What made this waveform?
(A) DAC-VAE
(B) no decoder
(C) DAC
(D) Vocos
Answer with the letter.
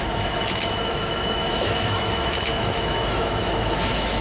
A